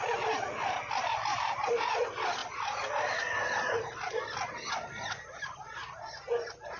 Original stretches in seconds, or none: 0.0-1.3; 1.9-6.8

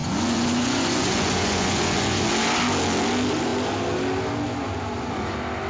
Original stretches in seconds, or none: 2.3-5.7

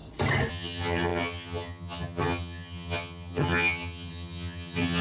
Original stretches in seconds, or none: 0.0-0.5

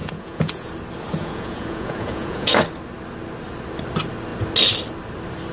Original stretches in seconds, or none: 0.7-1.2; 2.6-5.5

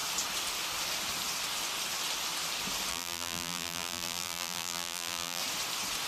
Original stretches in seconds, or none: 0.0-2.9; 5.4-6.1